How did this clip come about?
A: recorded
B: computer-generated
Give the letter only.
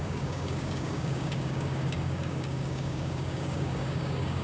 B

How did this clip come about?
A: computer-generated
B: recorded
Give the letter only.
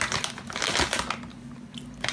B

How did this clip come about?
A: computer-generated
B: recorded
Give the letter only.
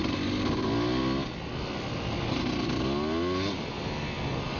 B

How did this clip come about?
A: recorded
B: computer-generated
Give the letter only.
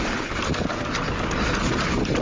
A